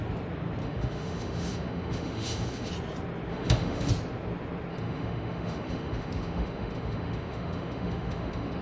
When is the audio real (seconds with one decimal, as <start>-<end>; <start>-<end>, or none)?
0.0-0.6; 2.7-3.3; 3.9-4.7